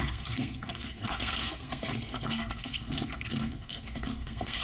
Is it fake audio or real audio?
fake